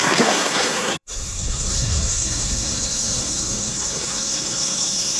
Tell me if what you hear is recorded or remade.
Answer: remade